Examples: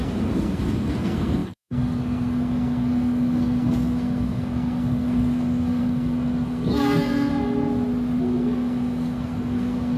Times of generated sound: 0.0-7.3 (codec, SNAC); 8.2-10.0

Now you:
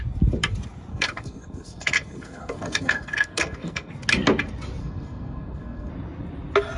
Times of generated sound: 0.9-3.9 (codec, SNAC); 4.8-5.9

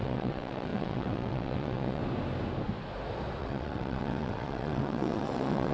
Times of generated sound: 0.0-2.0 (vocoder, WaveNeXt); 3.4-5.7

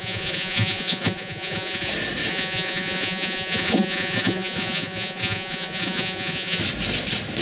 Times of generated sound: 0.0-1.9 (vocoder, Vocos); 2.3-6.6